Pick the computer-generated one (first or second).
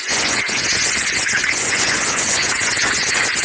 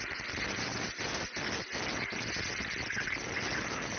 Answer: first